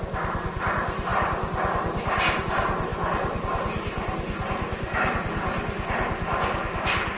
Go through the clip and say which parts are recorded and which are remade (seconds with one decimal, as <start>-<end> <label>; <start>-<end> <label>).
0.0-2.9 recorded; 2.9-3.4 remade; 3.4-7.2 recorded